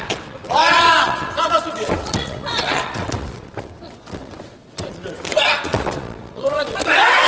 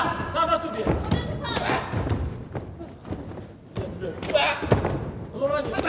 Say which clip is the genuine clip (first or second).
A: second